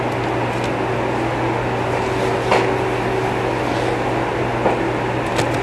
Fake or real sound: real